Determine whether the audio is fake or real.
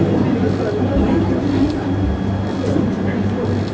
real